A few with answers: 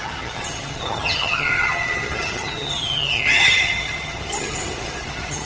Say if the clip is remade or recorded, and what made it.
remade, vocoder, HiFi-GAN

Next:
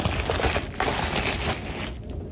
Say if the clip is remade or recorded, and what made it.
recorded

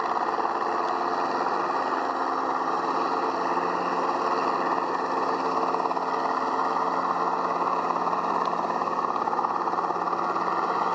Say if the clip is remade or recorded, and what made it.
recorded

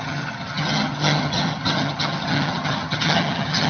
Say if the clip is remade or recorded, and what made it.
remade, vocoder, HiFi-GAN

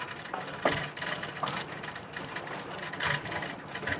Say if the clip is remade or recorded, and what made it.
recorded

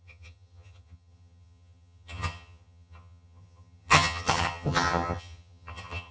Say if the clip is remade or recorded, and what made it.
remade, vocoder, HiFi-GAN